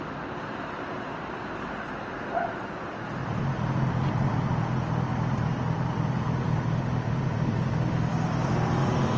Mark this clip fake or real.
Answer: real